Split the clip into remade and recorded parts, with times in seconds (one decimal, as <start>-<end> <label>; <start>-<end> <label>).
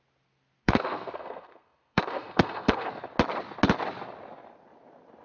0.0-0.6 recorded; 0.6-2.9 remade; 2.9-5.2 recorded